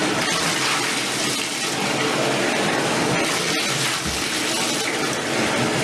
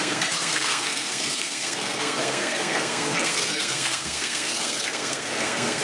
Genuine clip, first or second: first